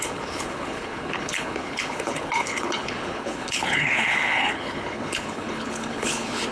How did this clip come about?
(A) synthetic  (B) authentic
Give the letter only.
A